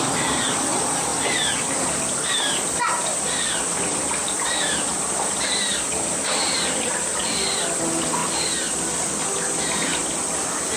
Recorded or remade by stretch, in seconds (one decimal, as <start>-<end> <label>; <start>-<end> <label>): 0.0-3.1 recorded; 3.1-3.7 remade; 3.7-4.2 recorded; 4.2-7.2 remade; 7.2-8.2 recorded; 8.2-10.3 remade; 10.3-10.8 recorded